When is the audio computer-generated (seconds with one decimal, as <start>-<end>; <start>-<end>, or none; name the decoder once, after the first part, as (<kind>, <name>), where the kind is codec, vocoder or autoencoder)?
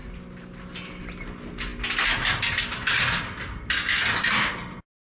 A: none